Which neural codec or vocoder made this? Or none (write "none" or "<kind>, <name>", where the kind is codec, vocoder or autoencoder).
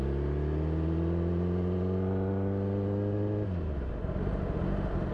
none